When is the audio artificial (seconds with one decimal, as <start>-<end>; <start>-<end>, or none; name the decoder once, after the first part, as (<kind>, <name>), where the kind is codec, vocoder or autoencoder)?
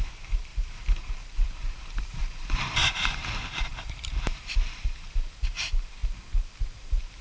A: 0.0-6.0 (vocoder, BigVGAN v2); 6.6-7.2